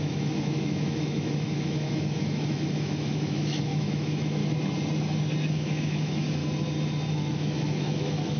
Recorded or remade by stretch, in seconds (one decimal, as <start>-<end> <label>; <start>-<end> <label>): 0.0-4.4 remade; 4.4-5.5 recorded; 5.5-6.4 remade; 6.4-7.1 recorded; 7.1-8.4 remade

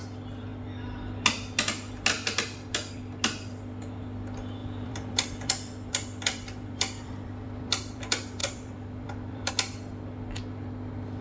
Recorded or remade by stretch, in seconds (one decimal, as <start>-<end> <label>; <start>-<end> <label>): 0.0-4.6 recorded; 4.6-8.0 remade; 8.0-8.4 recorded; 8.4-9.5 remade; 9.5-11.2 recorded

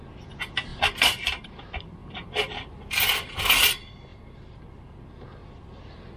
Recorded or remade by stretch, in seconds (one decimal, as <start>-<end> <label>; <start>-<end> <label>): 0.0-0.7 recorded; 0.7-1.6 remade; 1.6-2.0 recorded; 2.0-3.6 remade; 3.6-5.4 recorded; 5.4-6.2 remade

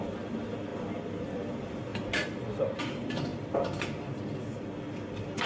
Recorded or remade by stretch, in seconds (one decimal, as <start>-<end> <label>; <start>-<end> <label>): 0.0-0.7 remade; 0.7-1.3 recorded; 1.3-1.9 remade; 1.9-2.8 recorded; 2.8-4.4 remade; 4.4-5.5 recorded

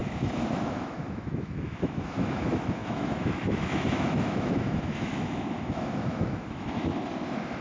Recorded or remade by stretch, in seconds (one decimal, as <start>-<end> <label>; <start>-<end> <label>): 0.0-6.9 remade; 6.9-7.6 recorded

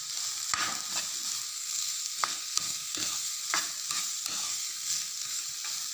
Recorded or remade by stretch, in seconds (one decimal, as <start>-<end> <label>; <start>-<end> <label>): 0.0-1.5 recorded; 1.5-3.4 remade; 3.4-4.4 recorded; 4.4-5.4 remade; 5.4-5.9 recorded

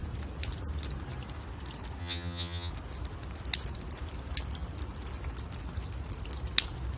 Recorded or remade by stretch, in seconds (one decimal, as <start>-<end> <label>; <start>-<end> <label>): 0.0-2.0 recorded; 2.0-2.7 remade; 2.7-7.0 recorded